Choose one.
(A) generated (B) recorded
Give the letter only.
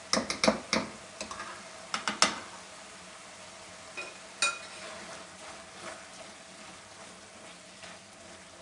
B